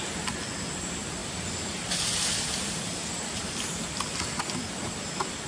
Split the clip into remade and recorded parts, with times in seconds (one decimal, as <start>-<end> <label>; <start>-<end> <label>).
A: 0.0-5.5 recorded